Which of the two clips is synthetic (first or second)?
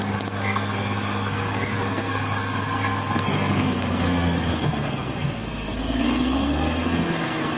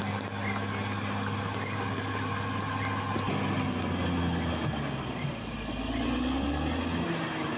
first